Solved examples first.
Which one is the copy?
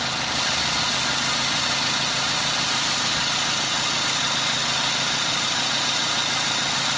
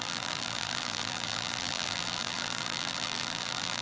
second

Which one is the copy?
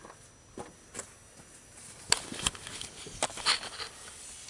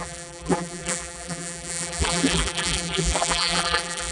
second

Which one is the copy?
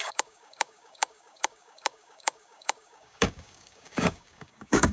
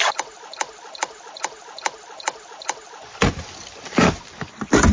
first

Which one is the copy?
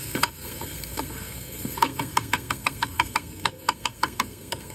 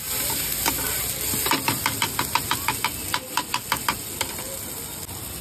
first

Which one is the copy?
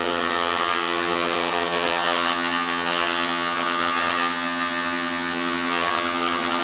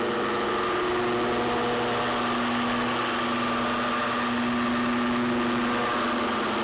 first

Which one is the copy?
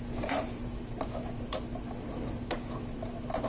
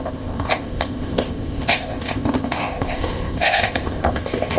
second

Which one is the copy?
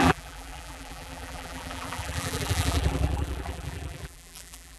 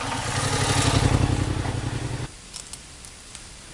first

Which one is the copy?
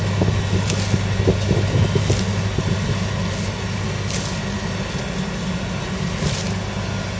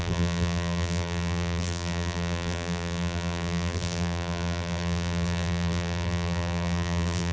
second